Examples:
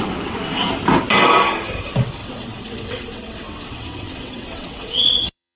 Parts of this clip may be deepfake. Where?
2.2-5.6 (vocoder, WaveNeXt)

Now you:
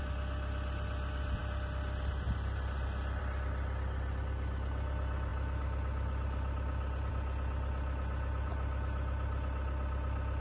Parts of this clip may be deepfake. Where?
5.3-7.1 (vocoder, BigVGAN v2)

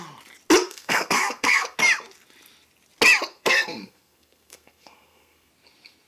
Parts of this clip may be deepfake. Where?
0.6-1.8 (codec, SNAC); 3.3-5.5

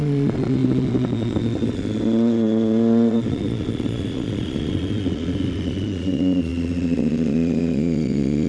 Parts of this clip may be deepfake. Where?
0.0-8.5 (vocoder, Vocos)

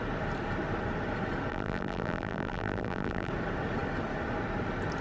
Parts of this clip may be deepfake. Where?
1.5-3.3 (vocoder, BigVGAN v2)